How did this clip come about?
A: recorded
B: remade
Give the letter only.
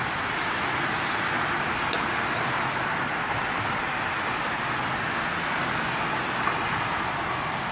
A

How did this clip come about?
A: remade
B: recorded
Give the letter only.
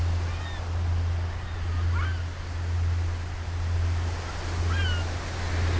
B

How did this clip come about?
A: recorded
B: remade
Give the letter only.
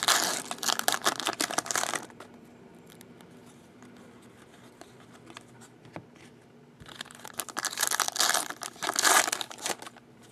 A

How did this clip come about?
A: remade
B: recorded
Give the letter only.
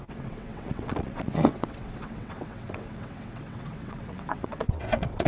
A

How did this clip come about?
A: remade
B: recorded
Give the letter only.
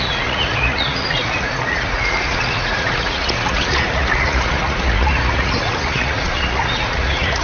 A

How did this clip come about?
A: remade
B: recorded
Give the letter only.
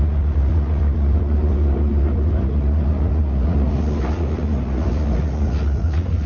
A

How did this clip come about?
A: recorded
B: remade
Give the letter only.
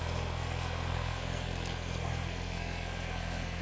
B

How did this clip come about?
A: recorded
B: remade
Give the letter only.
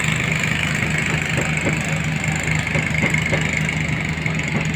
A